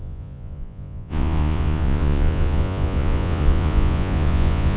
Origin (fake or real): fake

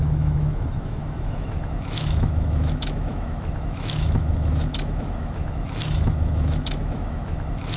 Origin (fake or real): fake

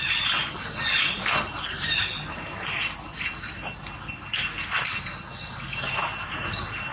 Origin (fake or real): real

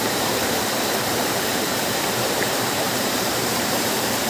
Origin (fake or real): fake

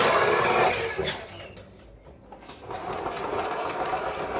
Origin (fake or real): real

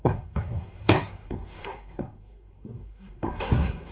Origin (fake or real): fake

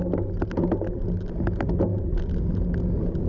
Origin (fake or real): real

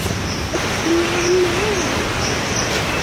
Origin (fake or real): real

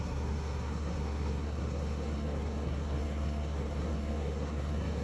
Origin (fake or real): fake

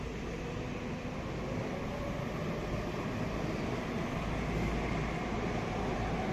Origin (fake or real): real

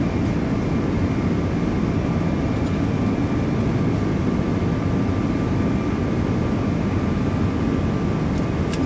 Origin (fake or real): real